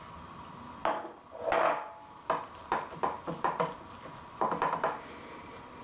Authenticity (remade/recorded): recorded